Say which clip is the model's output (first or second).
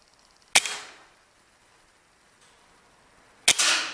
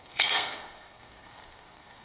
second